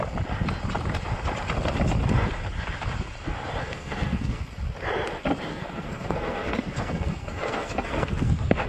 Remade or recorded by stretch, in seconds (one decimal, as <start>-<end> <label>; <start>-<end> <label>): 0.0-3.6 recorded; 3.6-4.4 remade; 4.4-5.5 recorded; 5.5-8.7 remade